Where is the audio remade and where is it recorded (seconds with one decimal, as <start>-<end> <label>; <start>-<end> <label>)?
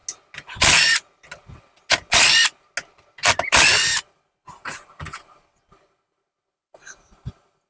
0.0-7.7 recorded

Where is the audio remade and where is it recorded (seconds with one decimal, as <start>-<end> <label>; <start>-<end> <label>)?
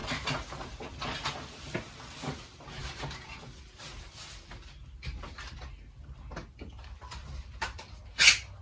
0.0-8.6 recorded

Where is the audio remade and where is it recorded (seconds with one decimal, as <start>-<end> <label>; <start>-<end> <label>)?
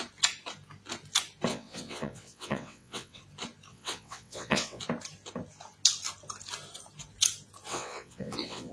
0.0-1.5 recorded; 1.5-3.2 remade; 3.2-3.7 recorded; 3.7-4.8 remade; 4.8-7.7 recorded; 7.7-8.7 remade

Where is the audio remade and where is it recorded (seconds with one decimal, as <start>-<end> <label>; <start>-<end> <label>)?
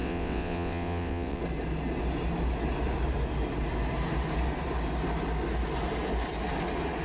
0.0-1.4 remade; 1.4-7.0 recorded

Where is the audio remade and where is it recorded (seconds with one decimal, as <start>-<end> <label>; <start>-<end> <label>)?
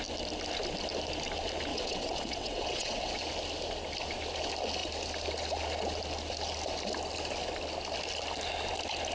0.0-1.7 recorded; 1.7-3.1 remade; 3.1-9.1 recorded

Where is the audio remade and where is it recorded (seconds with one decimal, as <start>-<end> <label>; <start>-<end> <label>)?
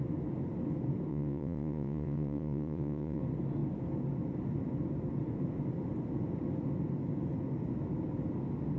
0.0-1.1 recorded; 1.1-3.2 remade; 3.2-8.8 recorded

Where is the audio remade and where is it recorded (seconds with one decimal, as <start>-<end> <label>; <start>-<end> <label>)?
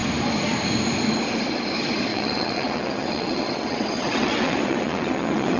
0.0-2.1 recorded; 2.1-5.6 remade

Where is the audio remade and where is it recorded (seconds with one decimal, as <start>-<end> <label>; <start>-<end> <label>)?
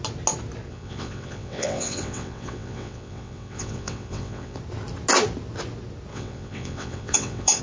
0.0-0.7 recorded; 0.7-4.6 remade; 4.6-6.1 recorded; 6.1-7.6 remade